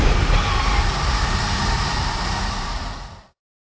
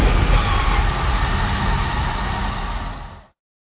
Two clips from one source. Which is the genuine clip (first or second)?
second